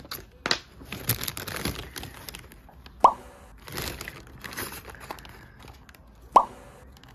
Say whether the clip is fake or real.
real